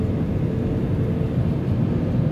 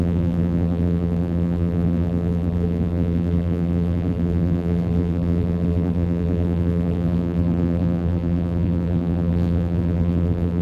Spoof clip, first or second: second